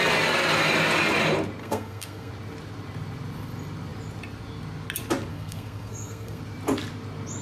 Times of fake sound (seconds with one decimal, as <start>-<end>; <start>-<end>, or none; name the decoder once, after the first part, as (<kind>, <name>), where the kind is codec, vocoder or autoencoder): 1.6-2.3 (codec, SNAC); 5.3-6.4